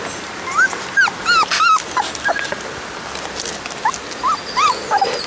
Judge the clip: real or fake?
real